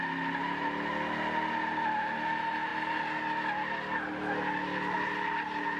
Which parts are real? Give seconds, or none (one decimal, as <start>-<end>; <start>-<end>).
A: 0.0-5.8

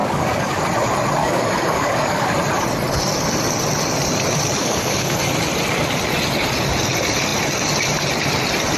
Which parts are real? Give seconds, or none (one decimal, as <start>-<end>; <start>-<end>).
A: 0.6-1.2; 2.3-4.6; 5.2-8.8